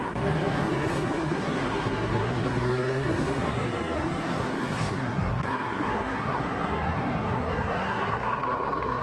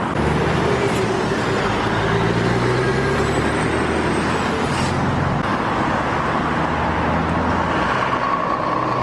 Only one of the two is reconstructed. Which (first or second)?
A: first